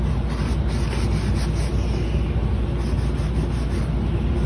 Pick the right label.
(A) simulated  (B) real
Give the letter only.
B